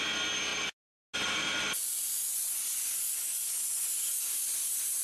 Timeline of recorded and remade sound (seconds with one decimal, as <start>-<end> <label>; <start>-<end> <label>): 0.0-5.0 recorded